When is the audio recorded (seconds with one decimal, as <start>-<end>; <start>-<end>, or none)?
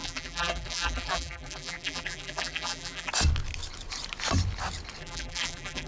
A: 3.1-5.0